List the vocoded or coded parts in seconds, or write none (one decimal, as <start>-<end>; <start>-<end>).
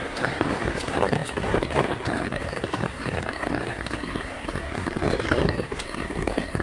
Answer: 0.0-6.6